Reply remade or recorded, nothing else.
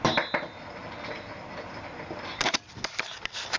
recorded